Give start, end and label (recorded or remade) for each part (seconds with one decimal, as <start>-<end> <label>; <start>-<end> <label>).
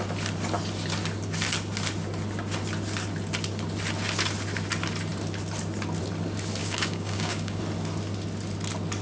0.0-6.6 recorded; 6.6-7.6 remade; 7.6-9.0 recorded